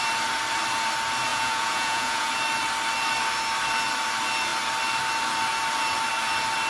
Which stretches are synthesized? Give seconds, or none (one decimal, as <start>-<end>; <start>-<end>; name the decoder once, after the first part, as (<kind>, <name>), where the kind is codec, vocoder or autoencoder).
1.3-2.3 (vocoder, Vocos)